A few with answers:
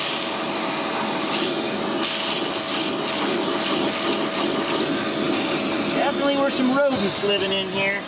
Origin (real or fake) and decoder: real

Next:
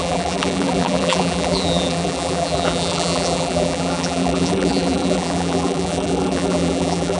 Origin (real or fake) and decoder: fake, vocoder, BigVGAN v2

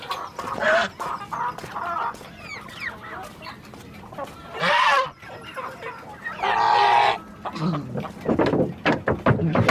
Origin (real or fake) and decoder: real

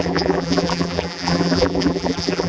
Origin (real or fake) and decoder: fake, vocoder, BigVGAN v2